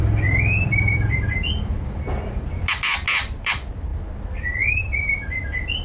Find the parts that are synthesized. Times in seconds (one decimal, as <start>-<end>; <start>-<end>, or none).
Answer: 0.0-3.9; 4.7-5.8